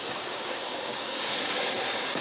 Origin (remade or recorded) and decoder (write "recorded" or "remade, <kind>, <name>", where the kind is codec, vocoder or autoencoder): remade, codec, DAC